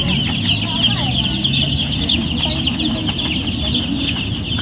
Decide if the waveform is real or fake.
real